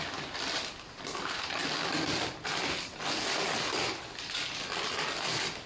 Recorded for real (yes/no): yes